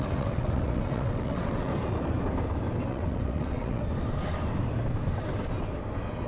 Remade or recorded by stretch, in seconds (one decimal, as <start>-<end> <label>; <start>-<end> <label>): 0.0-1.7 remade; 1.7-2.9 recorded; 2.9-3.8 remade; 3.8-6.3 recorded